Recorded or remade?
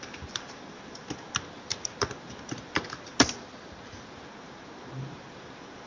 recorded